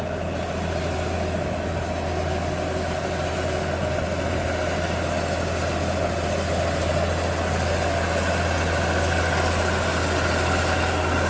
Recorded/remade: recorded